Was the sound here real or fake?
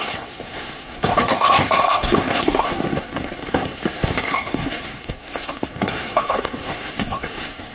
fake